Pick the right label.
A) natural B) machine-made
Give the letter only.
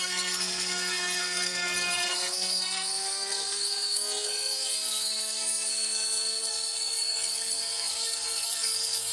B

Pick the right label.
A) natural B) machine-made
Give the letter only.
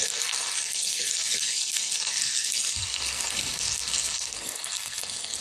B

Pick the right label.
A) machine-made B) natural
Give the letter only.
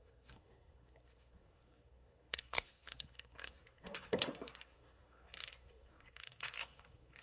A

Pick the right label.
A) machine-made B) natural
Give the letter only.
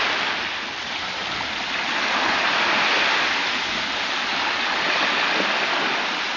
B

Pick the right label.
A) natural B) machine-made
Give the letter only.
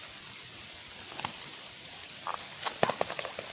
A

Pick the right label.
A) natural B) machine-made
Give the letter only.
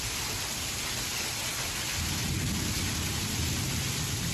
A